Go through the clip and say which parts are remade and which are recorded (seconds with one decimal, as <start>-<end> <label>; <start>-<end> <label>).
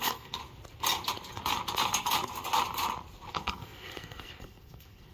0.0-0.4 remade; 0.4-3.3 recorded; 3.3-5.1 remade